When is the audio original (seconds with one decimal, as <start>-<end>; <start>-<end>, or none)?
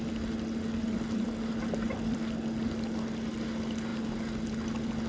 0.0-5.1